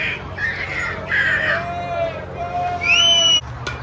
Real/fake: real